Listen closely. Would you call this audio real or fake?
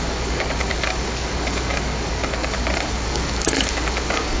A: fake